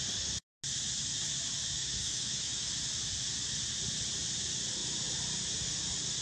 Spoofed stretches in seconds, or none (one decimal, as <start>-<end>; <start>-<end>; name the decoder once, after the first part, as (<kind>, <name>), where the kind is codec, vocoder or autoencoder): 1.8-2.7 (autoencoder, DAC-VAE)